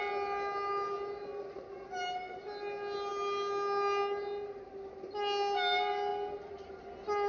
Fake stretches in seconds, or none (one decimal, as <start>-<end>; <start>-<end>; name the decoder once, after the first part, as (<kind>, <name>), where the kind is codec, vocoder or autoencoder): none